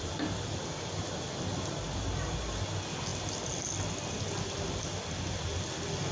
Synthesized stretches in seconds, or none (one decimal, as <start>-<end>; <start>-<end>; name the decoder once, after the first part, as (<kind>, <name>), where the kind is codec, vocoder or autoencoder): none